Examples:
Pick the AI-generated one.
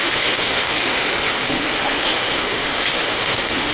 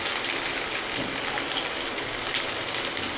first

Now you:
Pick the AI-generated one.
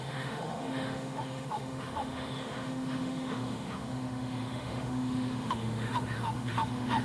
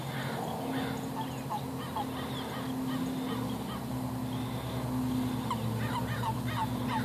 first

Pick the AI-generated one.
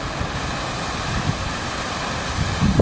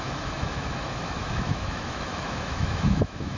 second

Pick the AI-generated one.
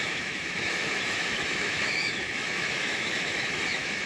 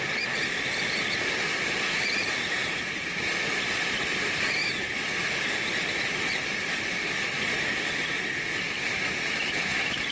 first